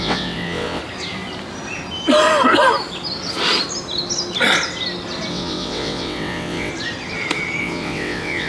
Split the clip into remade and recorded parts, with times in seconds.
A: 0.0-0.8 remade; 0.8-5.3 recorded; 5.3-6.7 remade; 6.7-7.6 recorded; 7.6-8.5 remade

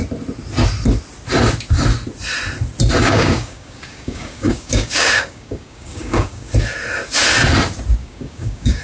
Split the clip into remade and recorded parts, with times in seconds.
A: 0.0-3.0 recorded; 3.0-6.5 remade; 6.5-8.0 recorded; 8.0-8.8 remade

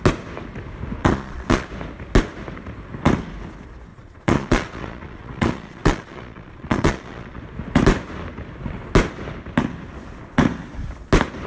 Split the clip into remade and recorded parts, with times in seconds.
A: 0.0-1.0 recorded; 1.0-1.7 remade; 1.7-3.9 recorded; 3.9-7.4 remade; 7.4-11.5 recorded

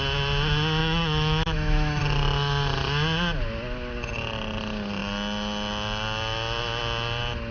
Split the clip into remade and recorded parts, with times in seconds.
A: 0.0-0.8 recorded; 0.8-2.0 remade; 2.0-7.5 recorded